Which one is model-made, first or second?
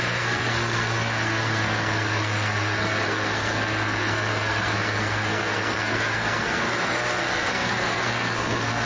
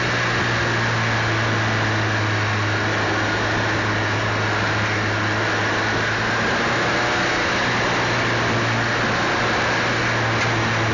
first